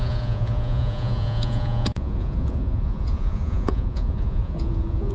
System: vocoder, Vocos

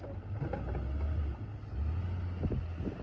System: none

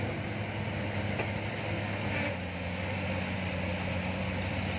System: none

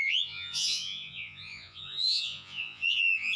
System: vocoder, Vocos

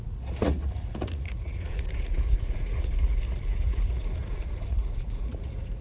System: vocoder, Vocos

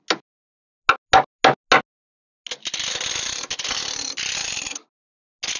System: none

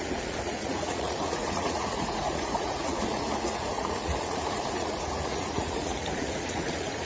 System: vocoder, Vocos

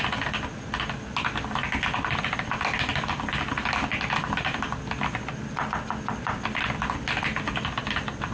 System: none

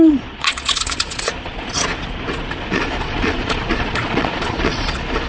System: vocoder, Vocos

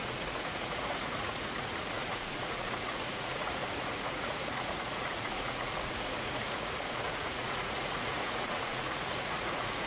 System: vocoder, Vocos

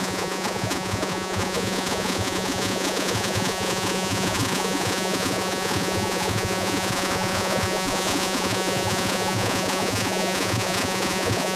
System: vocoder, Vocos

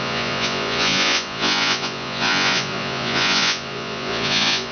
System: vocoder, Vocos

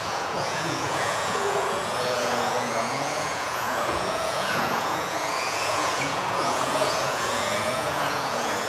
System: vocoder, Vocos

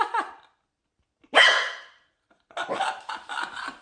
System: none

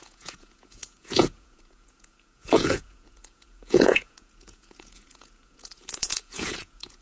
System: vocoder, Vocos